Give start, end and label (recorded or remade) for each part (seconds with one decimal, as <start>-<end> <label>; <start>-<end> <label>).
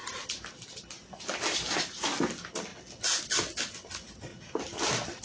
0.0-5.2 recorded